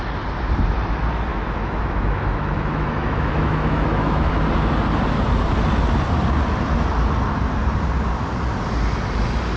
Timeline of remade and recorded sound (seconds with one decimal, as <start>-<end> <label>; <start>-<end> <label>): 0.0-1.3 recorded; 1.3-4.3 remade; 4.3-9.6 recorded

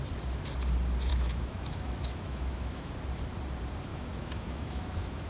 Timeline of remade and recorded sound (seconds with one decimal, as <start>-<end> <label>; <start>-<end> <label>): 0.0-1.1 recorded; 1.1-2.9 remade; 2.9-3.9 recorded; 3.9-5.3 remade

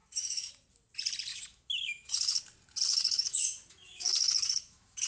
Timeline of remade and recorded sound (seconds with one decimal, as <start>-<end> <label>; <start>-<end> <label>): 0.0-0.5 remade; 0.5-1.3 recorded; 1.3-2.4 remade; 2.4-2.9 recorded; 2.9-5.1 remade

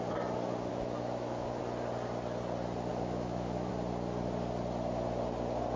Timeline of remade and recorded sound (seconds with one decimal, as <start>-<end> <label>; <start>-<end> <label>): 0.0-0.7 recorded; 0.7-1.6 remade; 1.6-2.9 recorded; 2.9-3.7 remade; 3.7-5.8 recorded

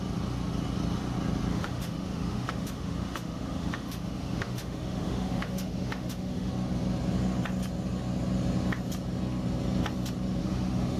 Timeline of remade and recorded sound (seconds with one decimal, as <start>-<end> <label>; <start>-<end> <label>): 0.0-1.5 recorded; 1.5-6.5 remade; 6.5-10.4 recorded; 10.4-11.0 remade

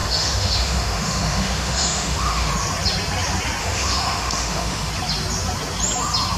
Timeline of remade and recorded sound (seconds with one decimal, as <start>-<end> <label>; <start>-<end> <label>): 0.0-2.5 remade; 2.5-3.6 recorded; 3.6-4.9 remade; 4.9-6.4 recorded